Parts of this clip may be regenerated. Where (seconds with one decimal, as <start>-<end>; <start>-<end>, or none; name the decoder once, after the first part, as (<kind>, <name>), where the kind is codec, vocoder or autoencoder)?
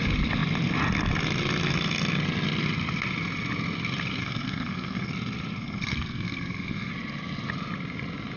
4.2-5.1 (codec, SNAC); 5.6-6.9